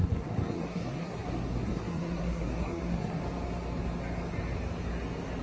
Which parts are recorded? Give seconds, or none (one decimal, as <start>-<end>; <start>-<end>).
3.2-5.4